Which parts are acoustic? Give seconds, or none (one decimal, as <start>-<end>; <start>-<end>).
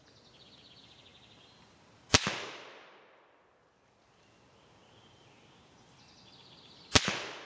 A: 0.0-7.5